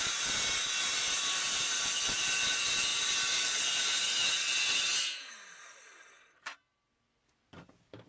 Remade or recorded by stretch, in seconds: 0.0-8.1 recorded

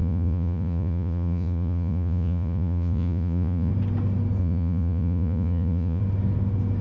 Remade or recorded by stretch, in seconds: 0.0-3.7 remade; 3.7-4.4 recorded; 4.4-6.0 remade; 6.0-6.8 recorded